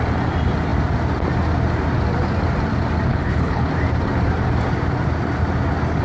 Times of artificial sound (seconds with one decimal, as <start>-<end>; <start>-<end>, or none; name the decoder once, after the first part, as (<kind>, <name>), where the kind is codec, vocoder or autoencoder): 3.1-3.7 (codec, HILCodec)